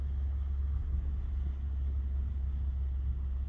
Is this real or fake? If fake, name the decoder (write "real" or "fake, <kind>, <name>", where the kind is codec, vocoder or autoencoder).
real